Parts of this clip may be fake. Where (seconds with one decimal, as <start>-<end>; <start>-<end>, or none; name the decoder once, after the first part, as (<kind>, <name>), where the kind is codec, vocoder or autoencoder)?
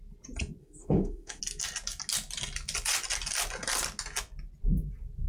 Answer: 0.6-1.4 (autoencoder, DAC-VAE)